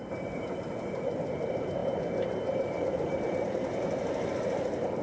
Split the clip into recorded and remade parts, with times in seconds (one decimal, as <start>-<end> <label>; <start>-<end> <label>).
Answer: 0.0-5.0 remade